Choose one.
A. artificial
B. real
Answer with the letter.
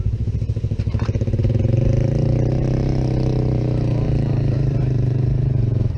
A